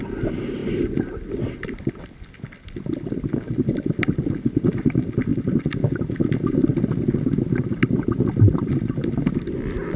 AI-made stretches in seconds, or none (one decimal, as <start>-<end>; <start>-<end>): none